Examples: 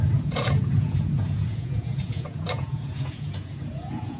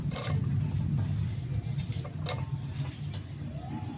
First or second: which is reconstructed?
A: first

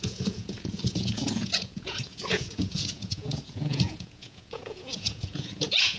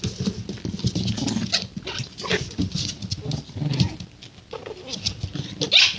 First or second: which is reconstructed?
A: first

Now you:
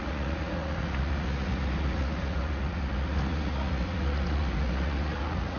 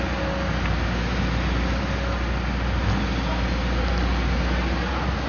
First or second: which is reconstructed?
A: first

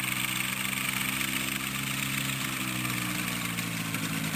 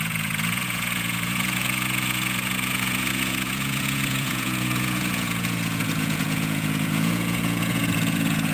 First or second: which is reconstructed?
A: second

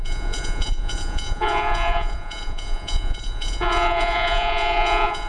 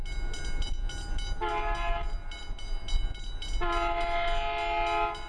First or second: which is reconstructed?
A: first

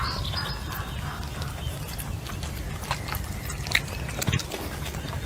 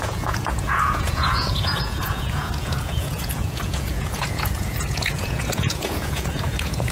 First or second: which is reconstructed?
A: second